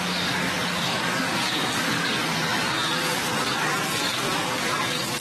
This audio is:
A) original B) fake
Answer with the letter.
B